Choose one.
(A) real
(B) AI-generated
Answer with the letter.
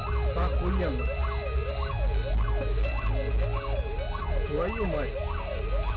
A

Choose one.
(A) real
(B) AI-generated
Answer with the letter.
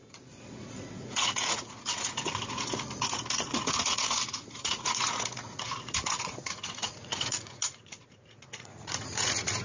B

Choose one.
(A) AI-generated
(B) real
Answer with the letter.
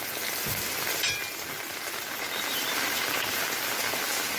B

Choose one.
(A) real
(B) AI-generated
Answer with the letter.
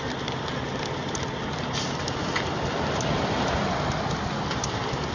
A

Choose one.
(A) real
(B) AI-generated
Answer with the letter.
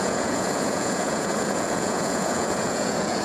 B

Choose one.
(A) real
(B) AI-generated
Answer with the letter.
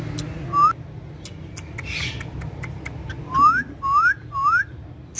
A